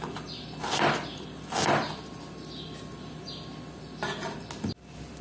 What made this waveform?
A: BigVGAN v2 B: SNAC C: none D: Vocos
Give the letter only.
C